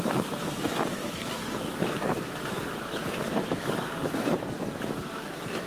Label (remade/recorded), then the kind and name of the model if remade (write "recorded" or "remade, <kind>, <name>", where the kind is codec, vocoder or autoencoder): remade, autoencoder, DAC-VAE